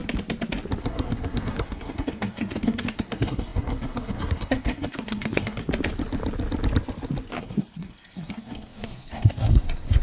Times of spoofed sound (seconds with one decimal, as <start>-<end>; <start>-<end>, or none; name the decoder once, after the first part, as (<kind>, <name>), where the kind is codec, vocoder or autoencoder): 0.8-5.6 (codec, SNAC); 7.4-10.0